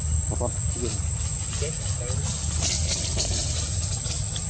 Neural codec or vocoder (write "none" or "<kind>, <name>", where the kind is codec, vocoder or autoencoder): none